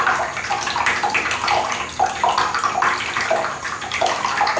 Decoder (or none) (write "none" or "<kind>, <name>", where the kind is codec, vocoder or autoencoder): none